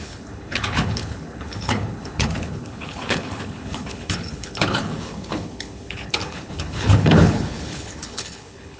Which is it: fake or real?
fake